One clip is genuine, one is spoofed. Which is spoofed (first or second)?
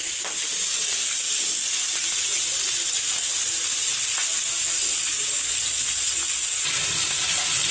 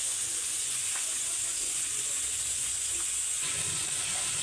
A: second